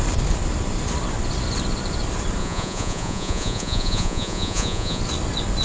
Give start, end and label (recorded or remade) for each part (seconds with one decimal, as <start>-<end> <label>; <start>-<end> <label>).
0.0-2.4 recorded; 2.4-5.0 remade; 5.0-5.6 recorded